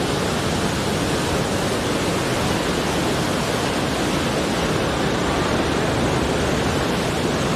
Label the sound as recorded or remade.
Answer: recorded